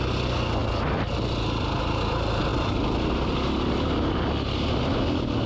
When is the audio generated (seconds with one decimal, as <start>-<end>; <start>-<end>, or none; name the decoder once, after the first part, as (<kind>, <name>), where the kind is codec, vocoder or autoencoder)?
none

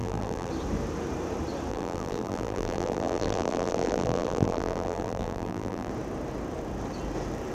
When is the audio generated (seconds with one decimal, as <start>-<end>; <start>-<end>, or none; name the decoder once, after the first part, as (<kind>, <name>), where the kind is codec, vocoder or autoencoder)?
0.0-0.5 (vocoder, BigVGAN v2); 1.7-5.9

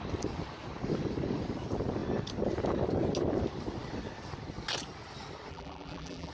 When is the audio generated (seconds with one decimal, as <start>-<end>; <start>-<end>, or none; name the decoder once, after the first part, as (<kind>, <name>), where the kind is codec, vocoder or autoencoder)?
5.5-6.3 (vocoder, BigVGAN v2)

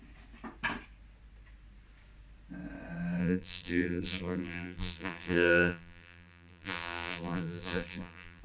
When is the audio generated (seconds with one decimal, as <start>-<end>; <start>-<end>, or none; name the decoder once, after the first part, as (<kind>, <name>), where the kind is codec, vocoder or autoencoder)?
3.2-8.4 (vocoder, BigVGAN v2)